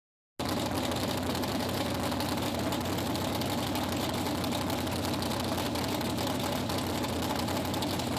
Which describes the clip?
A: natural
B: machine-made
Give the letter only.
A